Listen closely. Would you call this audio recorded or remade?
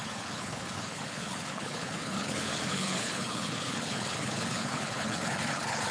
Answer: remade